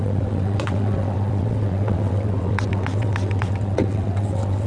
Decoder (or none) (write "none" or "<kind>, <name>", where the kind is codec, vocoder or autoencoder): vocoder, WaveNeXt